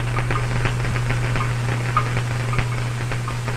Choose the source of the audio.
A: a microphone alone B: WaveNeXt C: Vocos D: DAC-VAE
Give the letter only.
A